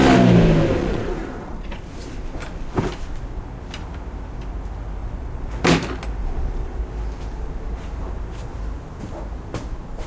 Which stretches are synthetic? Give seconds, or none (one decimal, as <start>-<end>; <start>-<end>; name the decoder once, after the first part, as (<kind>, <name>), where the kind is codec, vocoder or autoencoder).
0.8-1.8 (vocoder, Vocos); 5.0-5.5; 6.2-6.8